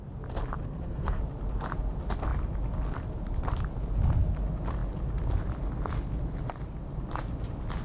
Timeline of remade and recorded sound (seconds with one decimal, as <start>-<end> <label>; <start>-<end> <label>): 0.0-0.6 recorded; 0.6-1.2 remade; 1.2-7.8 recorded